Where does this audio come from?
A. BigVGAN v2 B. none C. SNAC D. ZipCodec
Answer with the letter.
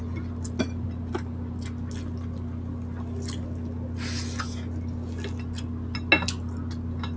B